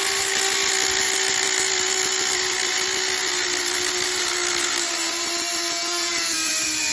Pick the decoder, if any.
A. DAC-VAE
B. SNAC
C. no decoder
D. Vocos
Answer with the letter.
C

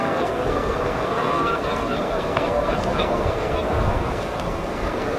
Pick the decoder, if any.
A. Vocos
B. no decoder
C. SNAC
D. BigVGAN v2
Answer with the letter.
C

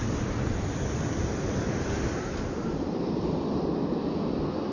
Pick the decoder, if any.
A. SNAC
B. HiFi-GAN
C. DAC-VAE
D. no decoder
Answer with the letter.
D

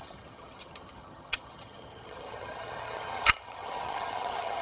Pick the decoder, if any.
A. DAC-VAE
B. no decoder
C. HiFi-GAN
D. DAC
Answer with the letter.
C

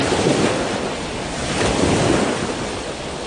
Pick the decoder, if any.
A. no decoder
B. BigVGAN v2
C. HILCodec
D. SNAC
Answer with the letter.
A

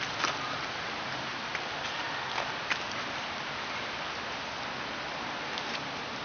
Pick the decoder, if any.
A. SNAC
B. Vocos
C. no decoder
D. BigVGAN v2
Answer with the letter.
C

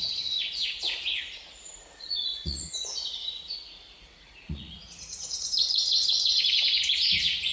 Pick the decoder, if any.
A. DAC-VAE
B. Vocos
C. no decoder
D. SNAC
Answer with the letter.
B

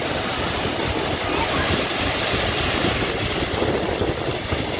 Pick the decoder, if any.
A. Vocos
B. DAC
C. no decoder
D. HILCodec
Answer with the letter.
C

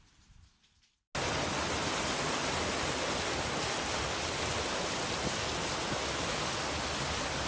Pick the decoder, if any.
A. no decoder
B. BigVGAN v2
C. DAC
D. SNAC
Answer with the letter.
A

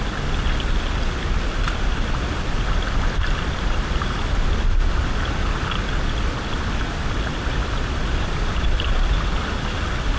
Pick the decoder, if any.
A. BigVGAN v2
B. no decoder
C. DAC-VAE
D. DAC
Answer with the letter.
B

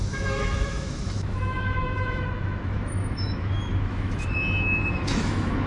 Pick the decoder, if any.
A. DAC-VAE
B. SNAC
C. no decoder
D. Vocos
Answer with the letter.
A